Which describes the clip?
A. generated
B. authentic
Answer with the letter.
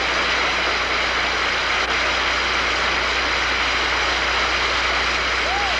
B